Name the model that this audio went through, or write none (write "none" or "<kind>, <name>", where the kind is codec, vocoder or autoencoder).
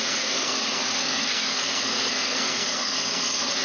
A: codec, SNAC